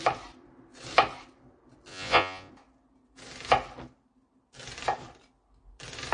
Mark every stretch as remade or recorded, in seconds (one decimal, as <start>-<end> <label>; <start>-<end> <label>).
0.0-1.9 recorded; 1.9-2.5 remade; 2.5-6.1 recorded